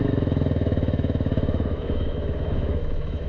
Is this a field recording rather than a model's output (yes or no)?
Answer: no